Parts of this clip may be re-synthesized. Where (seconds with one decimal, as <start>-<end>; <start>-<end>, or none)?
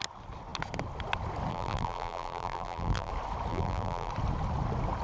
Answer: 1.5-3.1; 3.5-4.1